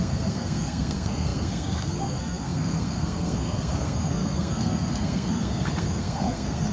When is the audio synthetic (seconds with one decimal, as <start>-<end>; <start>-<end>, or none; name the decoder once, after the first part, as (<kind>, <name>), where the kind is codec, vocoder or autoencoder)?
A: 0.0-6.7 (codec, SNAC)